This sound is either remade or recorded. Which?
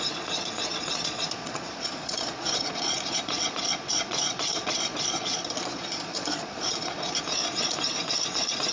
remade